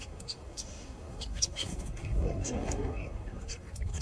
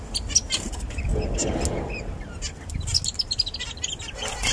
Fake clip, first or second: first